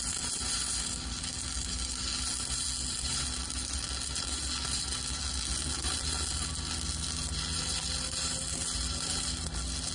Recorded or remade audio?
recorded